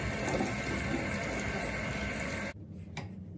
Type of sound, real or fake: real